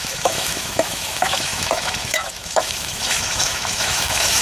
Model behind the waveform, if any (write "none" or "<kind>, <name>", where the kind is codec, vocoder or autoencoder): autoencoder, DAC-VAE